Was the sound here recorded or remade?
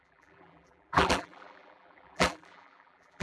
remade